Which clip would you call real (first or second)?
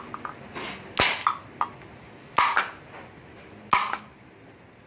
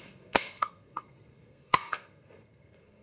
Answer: first